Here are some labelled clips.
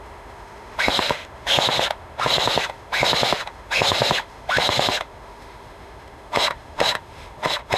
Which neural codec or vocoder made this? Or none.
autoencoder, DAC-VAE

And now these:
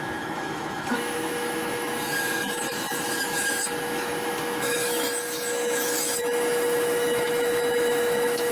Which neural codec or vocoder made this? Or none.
autoencoder, DAC-VAE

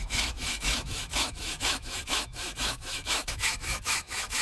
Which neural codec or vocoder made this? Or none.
autoencoder, DAC-VAE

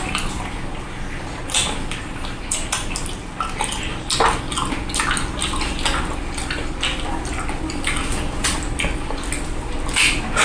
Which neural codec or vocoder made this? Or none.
none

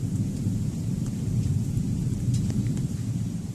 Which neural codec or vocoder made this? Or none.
vocoder, BigVGAN v2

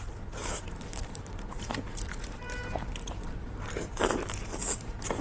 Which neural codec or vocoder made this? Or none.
vocoder, BigVGAN v2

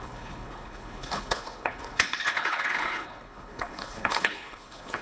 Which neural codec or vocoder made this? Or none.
codec, HILCodec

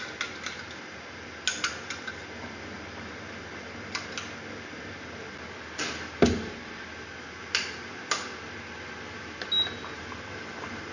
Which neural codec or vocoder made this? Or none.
none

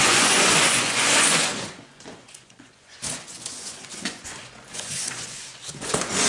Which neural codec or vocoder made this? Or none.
vocoder, Vocos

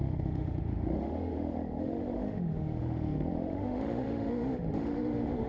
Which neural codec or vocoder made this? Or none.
autoencoder, DAC-VAE